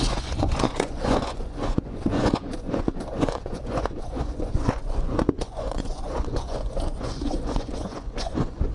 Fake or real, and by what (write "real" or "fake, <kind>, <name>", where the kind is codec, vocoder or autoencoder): fake, vocoder, Vocos